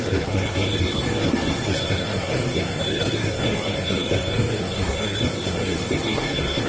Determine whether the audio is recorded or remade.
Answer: remade